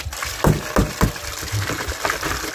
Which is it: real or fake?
real